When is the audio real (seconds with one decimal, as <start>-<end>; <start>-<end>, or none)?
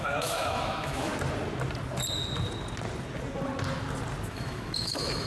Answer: 1.1-4.3